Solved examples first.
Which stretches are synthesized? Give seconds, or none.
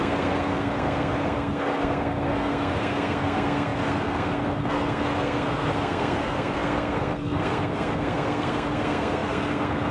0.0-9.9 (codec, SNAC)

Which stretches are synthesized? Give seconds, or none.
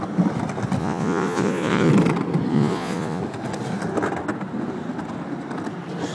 0.8-1.9 (vocoder, Vocos); 2.5-3.2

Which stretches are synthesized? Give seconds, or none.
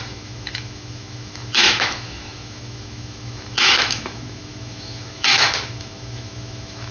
0.0-6.9 (autoencoder, DAC-VAE)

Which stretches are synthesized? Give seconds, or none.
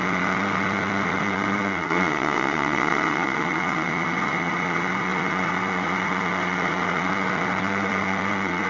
0.0-8.7 (vocoder, WaveNeXt)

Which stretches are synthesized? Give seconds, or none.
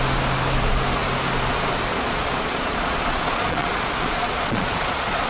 1.9-5.3 (vocoder, Vocos)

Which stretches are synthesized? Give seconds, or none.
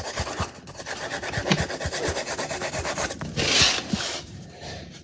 none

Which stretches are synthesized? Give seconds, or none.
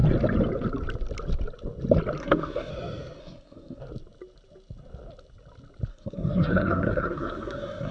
2.2-2.7 (codec, SNAC); 3.2-3.8; 5.9-7.9